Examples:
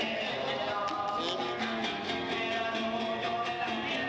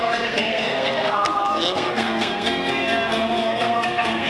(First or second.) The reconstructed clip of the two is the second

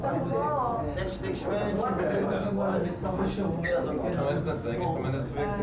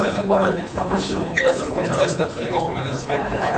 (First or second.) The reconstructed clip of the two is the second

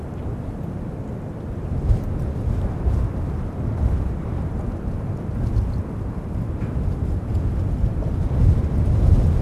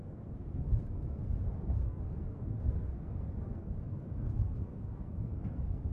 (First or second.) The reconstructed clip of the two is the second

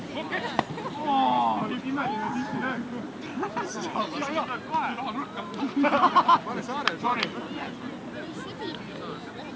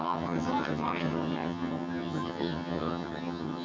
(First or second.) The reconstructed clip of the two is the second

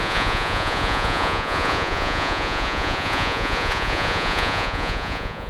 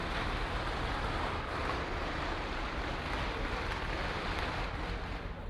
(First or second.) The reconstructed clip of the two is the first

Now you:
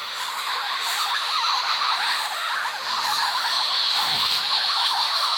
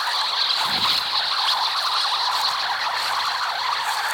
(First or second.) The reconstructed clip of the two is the first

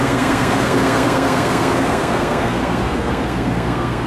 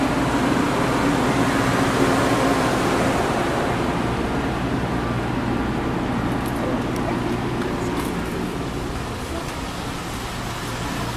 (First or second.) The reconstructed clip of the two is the first